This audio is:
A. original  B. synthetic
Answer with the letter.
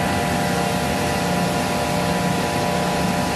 A